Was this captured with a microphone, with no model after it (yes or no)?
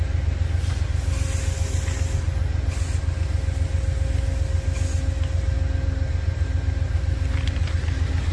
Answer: yes